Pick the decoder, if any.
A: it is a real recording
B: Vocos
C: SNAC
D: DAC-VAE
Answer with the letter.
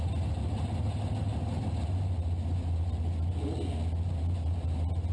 A